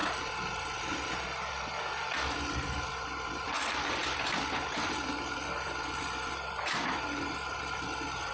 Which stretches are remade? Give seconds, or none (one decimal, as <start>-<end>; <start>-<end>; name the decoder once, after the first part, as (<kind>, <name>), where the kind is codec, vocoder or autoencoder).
none